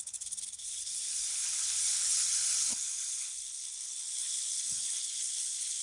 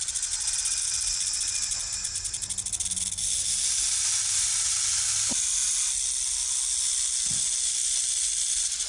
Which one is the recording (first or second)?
second